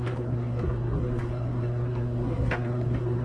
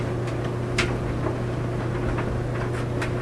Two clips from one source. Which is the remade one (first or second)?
first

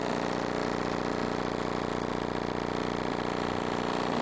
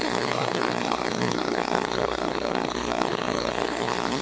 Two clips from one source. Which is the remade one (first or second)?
second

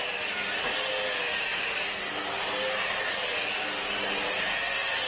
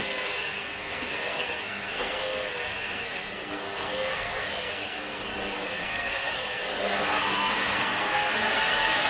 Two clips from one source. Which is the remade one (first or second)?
second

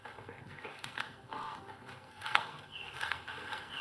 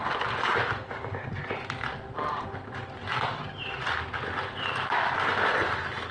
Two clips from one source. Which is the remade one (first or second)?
first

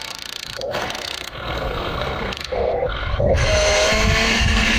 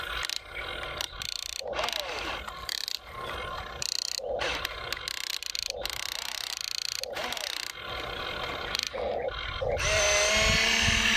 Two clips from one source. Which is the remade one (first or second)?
first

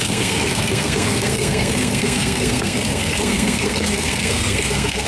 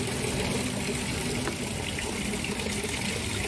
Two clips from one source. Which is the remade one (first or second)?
first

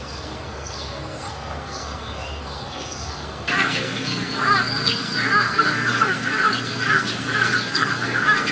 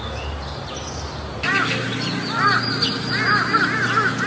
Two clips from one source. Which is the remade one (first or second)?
first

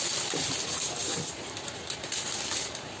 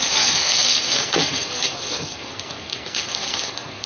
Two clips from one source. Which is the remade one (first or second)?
second